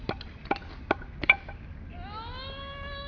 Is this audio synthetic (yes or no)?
no